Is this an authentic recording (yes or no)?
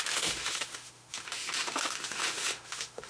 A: no